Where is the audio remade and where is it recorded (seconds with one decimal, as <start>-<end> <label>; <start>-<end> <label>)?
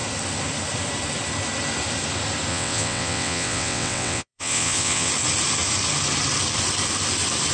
0.0-2.5 recorded; 2.5-5.1 remade; 5.1-7.5 recorded